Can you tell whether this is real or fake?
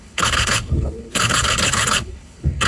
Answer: fake